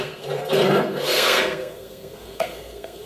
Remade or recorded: remade